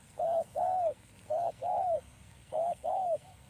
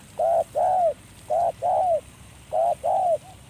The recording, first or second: second